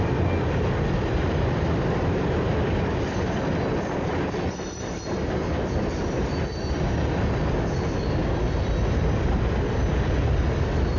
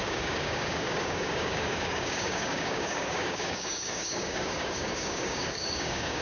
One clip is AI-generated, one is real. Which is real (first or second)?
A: first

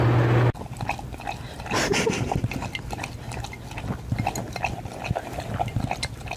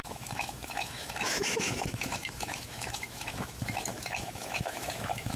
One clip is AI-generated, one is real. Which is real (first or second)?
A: first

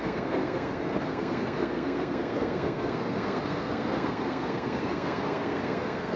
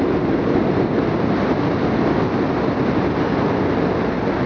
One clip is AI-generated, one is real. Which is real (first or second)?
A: second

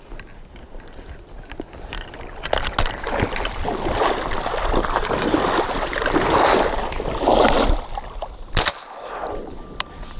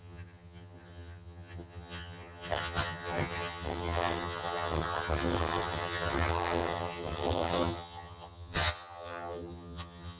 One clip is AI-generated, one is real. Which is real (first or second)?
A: first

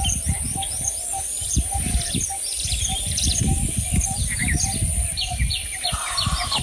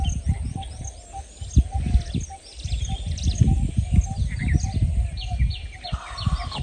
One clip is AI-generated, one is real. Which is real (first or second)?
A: second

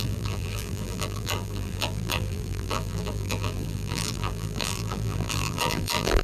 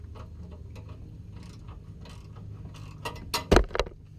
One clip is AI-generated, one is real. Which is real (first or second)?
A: second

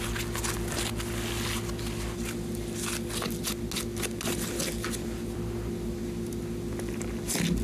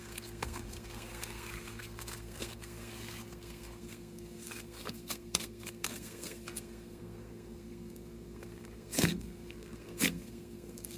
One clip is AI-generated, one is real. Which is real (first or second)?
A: first